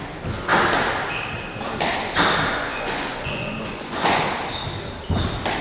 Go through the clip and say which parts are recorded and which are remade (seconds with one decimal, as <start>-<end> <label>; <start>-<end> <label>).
0.0-2.5 recorded; 2.5-4.2 remade; 4.2-5.6 recorded